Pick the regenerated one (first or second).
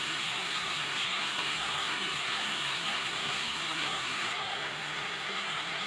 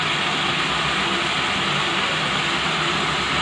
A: first